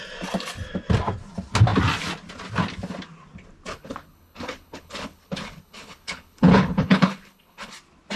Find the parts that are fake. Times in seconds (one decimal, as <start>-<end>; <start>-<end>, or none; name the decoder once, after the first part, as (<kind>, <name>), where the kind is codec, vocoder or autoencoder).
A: 3.7-7.7 (codec, HILCodec)